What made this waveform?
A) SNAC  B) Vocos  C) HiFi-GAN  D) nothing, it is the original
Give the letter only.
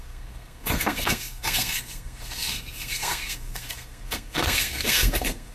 A